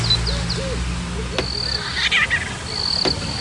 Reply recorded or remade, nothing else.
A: recorded